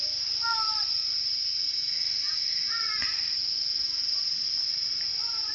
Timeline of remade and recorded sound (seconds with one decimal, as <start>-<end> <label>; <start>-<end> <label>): 0.0-5.5 recorded